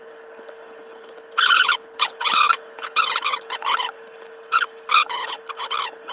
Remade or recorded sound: remade